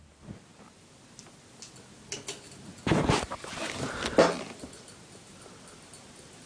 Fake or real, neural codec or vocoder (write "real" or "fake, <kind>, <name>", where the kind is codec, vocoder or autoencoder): real